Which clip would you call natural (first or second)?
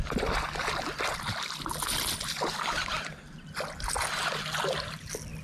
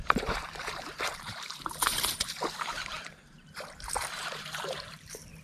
first